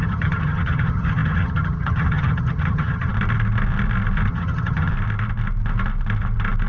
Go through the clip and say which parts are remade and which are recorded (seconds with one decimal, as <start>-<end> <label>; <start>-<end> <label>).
0.0-3.1 remade; 3.1-4.3 recorded; 4.3-4.9 remade; 4.9-6.7 recorded